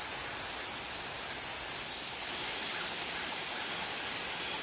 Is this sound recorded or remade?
recorded